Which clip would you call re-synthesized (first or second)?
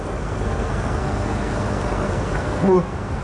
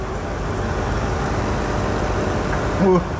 first